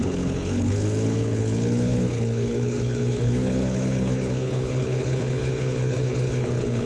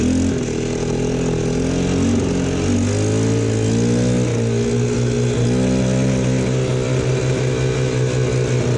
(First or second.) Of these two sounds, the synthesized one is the first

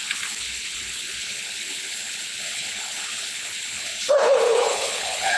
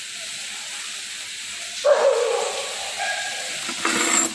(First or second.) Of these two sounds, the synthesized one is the first